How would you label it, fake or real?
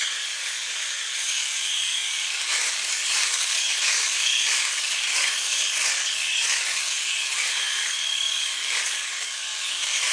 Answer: fake